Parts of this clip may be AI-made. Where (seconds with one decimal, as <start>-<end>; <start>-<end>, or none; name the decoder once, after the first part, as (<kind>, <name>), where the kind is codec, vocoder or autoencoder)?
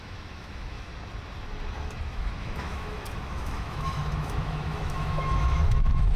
0.0-0.9 (autoencoder, DAC-VAE); 2.1-6.2